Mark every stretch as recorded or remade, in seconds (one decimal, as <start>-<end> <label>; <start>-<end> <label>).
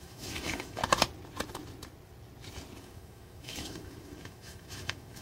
0.0-0.8 remade; 0.8-2.8 recorded; 2.8-5.2 remade